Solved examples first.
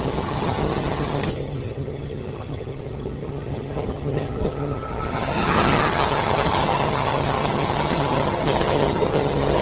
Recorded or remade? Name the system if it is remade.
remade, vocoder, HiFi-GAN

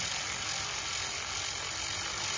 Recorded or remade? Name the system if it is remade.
recorded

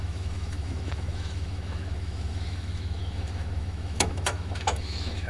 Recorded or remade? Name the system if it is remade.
remade, autoencoder, DAC-VAE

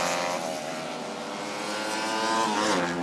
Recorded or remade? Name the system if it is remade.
recorded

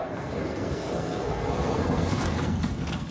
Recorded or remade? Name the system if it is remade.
remade, codec, SNAC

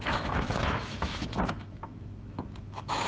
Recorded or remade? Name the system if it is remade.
remade, autoencoder, DAC-VAE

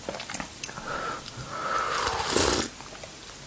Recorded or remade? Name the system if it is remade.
recorded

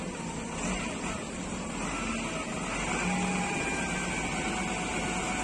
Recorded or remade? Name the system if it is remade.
recorded